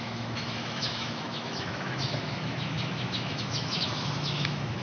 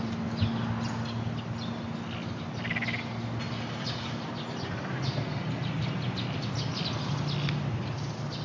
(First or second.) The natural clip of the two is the second